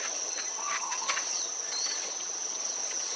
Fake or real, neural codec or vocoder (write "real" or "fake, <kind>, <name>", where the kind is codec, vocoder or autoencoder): fake, vocoder, HiFi-GAN